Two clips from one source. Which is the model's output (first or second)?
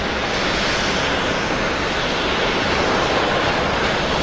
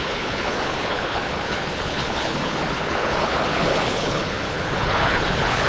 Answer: second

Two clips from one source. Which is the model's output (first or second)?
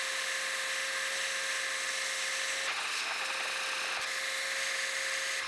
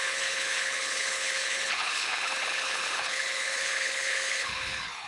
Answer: second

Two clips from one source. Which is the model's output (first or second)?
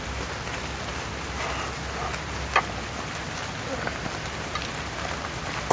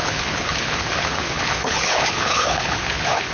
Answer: second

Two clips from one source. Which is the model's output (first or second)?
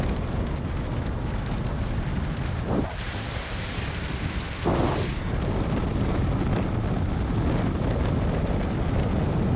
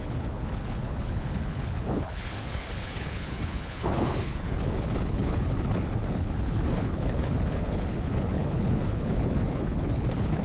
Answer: second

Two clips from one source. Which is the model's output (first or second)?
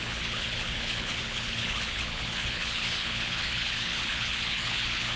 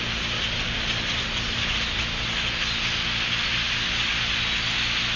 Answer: first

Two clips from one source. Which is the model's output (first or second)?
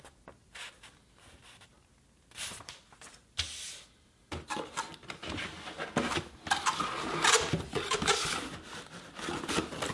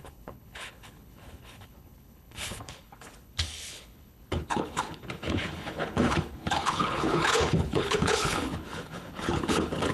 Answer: second